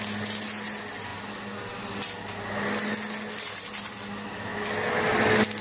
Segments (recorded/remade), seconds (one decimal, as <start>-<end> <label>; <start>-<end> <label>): 0.0-5.6 recorded